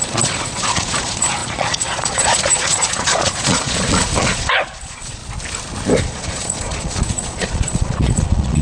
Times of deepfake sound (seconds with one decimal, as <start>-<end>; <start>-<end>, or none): 0.0-5.2; 6.0-8.6